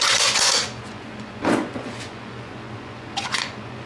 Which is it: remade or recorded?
remade